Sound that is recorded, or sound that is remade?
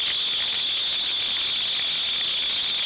recorded